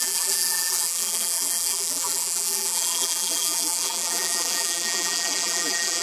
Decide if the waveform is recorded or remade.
remade